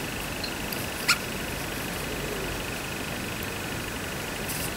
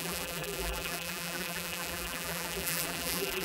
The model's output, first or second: second